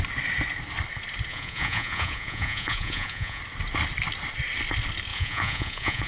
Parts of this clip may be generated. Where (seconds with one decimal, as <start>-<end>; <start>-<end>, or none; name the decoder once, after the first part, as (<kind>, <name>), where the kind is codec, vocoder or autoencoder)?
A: 1.3-3.4 (vocoder, Vocos); 5.1-6.1